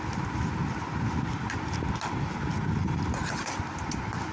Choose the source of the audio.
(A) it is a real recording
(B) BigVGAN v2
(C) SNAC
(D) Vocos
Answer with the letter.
A